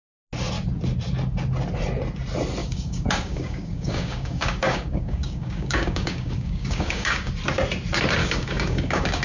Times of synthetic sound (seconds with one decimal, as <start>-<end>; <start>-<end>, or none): 2.6-7.3; 8.2-9.2